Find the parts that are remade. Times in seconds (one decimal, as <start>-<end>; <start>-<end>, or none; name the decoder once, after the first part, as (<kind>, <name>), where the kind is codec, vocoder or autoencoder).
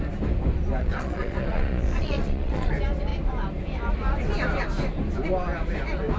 0.8-2.7 (vocoder, Vocos)